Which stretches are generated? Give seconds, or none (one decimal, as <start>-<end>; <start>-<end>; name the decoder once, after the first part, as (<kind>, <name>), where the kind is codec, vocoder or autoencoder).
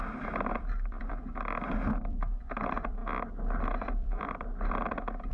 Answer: 0.5-1.1 (vocoder, BigVGAN v2); 2.0-3.0; 3.9-5.3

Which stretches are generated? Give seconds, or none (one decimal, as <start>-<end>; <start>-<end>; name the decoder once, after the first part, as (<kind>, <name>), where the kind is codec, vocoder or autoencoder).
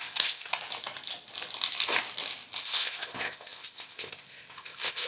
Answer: 0.0-0.5 (codec, ZipCodec); 2.6-5.1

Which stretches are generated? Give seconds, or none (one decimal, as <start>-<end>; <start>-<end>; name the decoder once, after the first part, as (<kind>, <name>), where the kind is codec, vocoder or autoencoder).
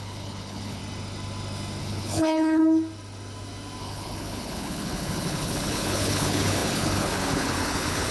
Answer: 0.0-0.8 (codec, HILCodec); 1.8-2.6; 3.8-8.1